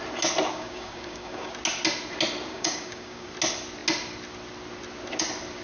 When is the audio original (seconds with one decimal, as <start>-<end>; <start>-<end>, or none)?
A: 0.0-0.5; 1.5-2.5; 3.3-5.6